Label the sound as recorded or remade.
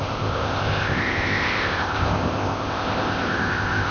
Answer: remade